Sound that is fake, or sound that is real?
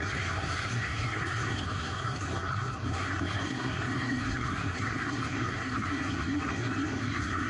fake